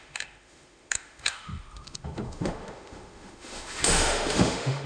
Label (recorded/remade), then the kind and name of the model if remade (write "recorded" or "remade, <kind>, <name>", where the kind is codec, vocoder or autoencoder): remade, autoencoder, DAC-VAE